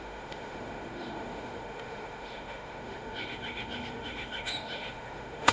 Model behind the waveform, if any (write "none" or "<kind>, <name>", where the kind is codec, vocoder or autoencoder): autoencoder, DAC-VAE